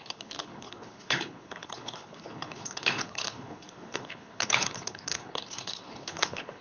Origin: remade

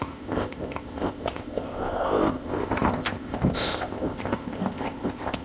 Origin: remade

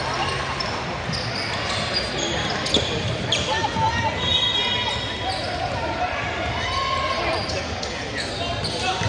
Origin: recorded